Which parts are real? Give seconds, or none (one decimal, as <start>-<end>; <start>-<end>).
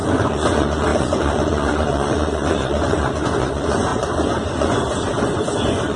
none